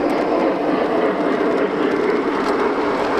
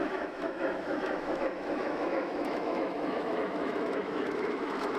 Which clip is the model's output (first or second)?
second